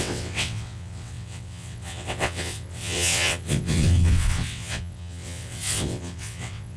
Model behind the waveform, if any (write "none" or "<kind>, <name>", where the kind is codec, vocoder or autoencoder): vocoder, WaveNeXt